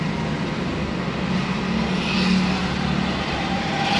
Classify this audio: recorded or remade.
recorded